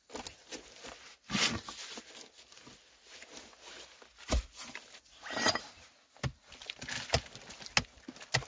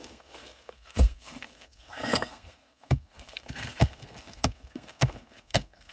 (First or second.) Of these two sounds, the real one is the first